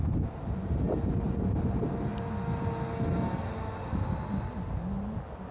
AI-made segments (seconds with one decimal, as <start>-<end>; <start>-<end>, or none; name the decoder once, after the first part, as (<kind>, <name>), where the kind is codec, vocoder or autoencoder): none